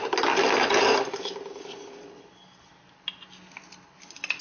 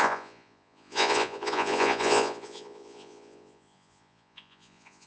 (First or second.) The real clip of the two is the first